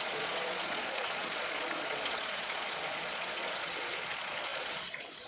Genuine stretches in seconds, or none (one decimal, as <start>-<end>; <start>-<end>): none